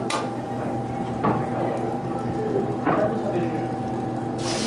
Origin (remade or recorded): recorded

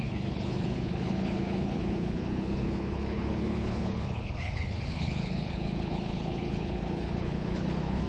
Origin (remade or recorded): remade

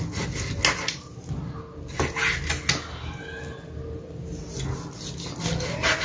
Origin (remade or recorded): recorded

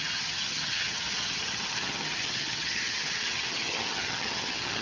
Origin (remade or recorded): remade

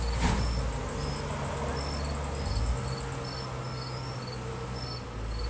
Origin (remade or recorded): recorded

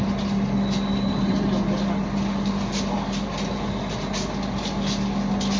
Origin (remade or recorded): recorded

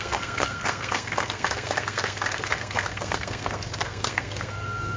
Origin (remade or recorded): remade